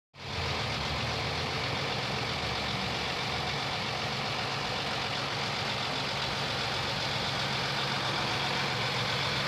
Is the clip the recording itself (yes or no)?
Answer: yes